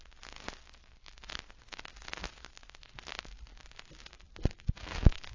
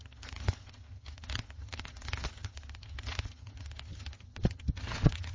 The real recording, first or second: first